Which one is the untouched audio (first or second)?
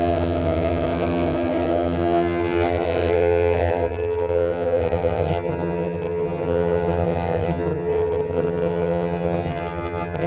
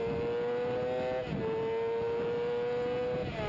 second